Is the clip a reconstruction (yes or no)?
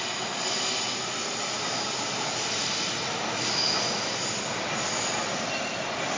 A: no